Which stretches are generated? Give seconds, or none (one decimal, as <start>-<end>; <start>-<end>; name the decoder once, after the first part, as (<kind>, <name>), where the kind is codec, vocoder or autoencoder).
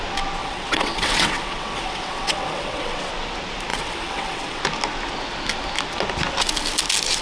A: 0.4-3.1 (vocoder, WaveNeXt); 3.7-4.6